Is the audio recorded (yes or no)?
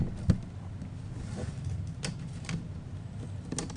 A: yes